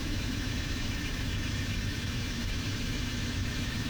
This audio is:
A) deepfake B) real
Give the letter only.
A